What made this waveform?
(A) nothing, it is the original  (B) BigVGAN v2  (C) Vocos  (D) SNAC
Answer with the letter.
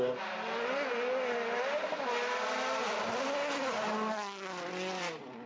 A